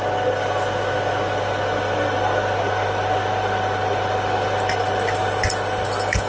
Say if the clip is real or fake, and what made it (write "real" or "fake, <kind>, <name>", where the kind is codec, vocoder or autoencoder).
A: real